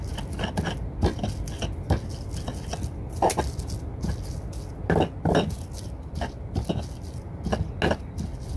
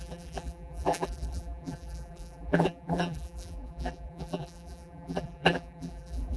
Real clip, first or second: first